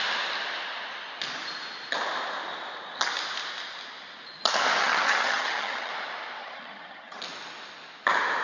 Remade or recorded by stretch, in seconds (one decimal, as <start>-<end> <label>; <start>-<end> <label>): 0.0-4.8 recorded; 4.8-5.9 remade; 5.9-6.4 recorded; 6.4-7.2 remade; 7.2-8.4 recorded